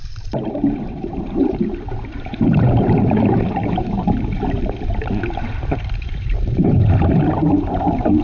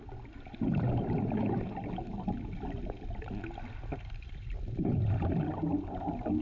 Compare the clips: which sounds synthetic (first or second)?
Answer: first